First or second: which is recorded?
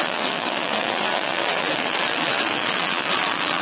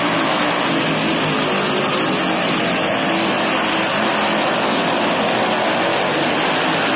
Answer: second